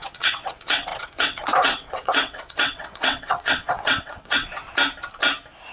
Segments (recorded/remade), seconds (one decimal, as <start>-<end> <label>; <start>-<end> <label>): 0.0-4.5 remade; 4.5-5.7 recorded